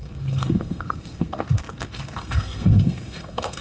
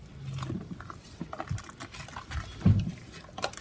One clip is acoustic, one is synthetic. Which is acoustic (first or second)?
second